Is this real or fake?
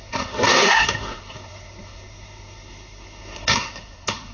fake